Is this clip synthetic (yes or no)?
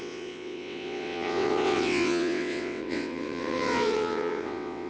yes